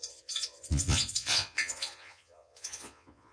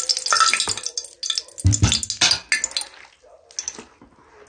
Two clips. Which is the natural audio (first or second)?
second